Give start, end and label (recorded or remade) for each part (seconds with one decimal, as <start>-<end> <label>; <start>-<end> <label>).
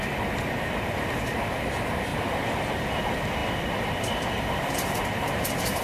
0.0-3.4 recorded; 3.4-4.7 remade; 4.7-5.8 recorded